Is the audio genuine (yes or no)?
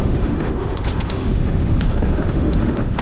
no